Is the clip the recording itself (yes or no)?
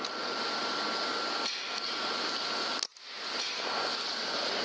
yes